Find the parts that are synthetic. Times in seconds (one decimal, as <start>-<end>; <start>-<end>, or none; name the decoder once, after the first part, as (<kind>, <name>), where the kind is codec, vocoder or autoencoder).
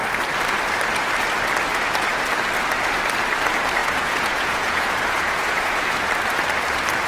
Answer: 3.8-6.1 (vocoder, Vocos)